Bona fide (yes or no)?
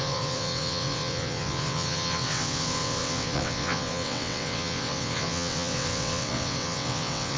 no